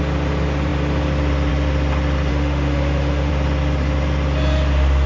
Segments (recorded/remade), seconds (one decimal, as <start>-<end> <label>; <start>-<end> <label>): 0.0-2.3 recorded; 2.3-3.3 remade; 3.3-5.1 recorded